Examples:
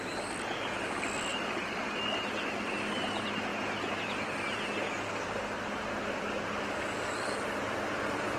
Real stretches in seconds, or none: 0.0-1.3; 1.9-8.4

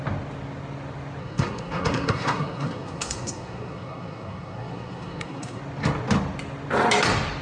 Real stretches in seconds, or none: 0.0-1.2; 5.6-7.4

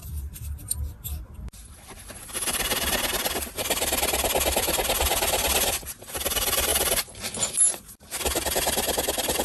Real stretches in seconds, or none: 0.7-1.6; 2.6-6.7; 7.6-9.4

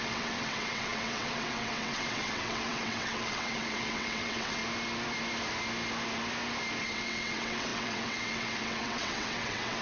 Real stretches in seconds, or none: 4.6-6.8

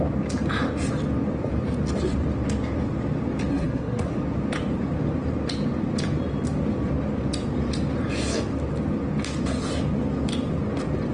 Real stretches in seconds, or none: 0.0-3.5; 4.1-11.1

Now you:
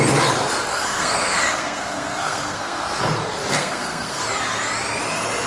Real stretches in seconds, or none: 0.0-0.7; 3.0-3.6; 4.2-5.5

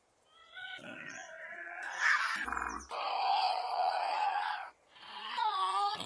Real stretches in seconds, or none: 0.0-0.4; 2.2-3.5